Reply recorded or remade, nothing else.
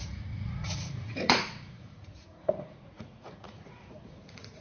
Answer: remade